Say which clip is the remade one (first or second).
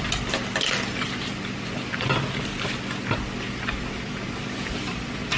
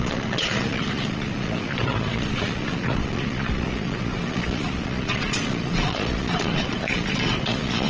second